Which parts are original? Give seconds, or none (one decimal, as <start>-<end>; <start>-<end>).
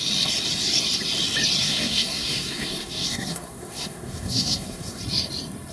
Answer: 0.0-1.6; 5.0-5.7